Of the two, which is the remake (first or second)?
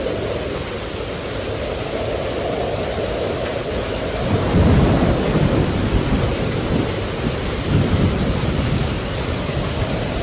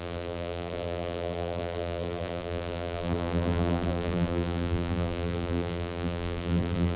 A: second